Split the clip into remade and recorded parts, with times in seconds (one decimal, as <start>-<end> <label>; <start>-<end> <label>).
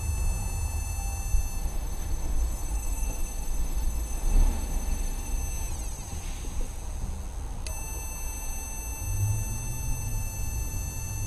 0.0-1.6 recorded; 1.6-5.4 remade; 5.4-11.3 recorded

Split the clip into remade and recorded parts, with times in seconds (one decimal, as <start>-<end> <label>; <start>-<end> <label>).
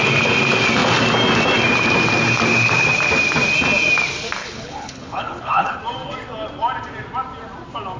0.0-4.4 recorded; 4.4-5.8 remade; 5.8-8.0 recorded